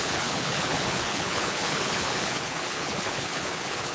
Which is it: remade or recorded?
remade